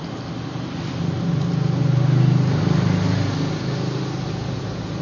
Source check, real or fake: real